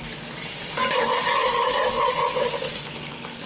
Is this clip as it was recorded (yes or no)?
yes